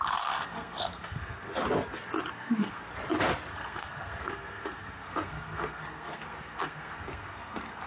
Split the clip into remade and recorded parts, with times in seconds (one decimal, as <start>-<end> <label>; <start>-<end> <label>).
0.0-1.5 remade; 1.5-2.3 recorded; 2.3-2.9 remade; 2.9-3.5 recorded; 3.5-7.9 remade